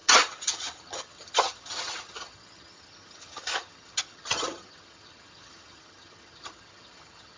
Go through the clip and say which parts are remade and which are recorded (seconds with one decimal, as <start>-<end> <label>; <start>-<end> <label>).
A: 0.0-7.4 remade